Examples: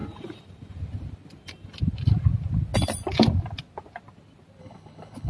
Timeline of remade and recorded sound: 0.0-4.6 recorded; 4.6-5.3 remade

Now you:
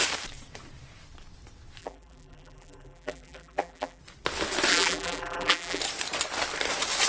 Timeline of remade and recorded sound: 0.0-1.8 recorded; 1.8-4.0 remade; 4.0-4.7 recorded; 4.7-5.8 remade; 5.8-7.1 recorded

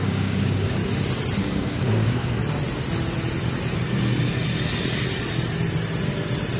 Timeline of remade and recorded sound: 0.0-0.8 remade; 0.8-1.4 recorded; 1.4-2.4 remade; 2.4-6.6 recorded

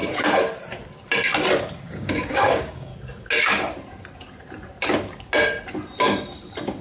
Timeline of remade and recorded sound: 0.0-1.9 recorded; 1.9-2.9 remade; 2.9-6.8 recorded

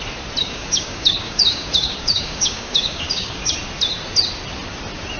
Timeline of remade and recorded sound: 0.0-0.4 recorded; 0.4-3.5 remade; 3.5-5.2 recorded